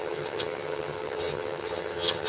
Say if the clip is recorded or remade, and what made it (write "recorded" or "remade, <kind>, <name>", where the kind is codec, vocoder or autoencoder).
remade, vocoder, HiFi-GAN